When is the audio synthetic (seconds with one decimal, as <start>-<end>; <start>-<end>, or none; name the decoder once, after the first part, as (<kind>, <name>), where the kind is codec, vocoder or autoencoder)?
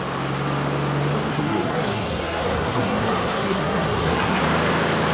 1.3-4.4 (codec, SNAC)